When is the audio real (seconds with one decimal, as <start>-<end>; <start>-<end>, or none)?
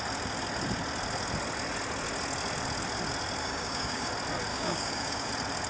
0.0-3.4; 4.1-4.5; 5.3-5.7